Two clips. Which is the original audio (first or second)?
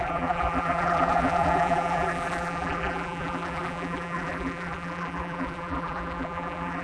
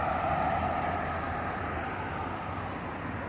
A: second